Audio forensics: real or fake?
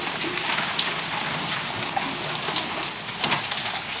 real